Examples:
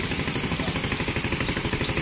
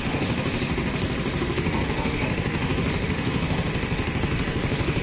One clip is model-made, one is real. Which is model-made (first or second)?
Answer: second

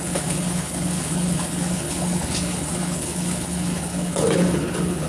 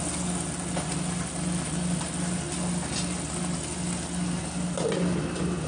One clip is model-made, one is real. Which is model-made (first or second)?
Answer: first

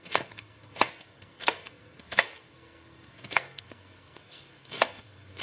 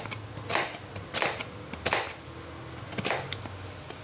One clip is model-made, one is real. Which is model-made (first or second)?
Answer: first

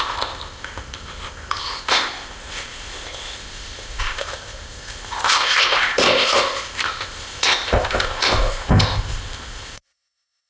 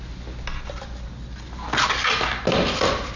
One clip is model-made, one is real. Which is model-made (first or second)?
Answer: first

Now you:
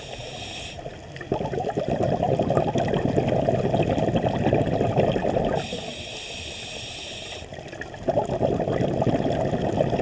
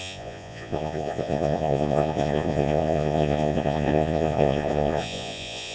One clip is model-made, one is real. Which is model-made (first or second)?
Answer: second